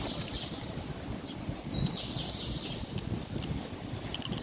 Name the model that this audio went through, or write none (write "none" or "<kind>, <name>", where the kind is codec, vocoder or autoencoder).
none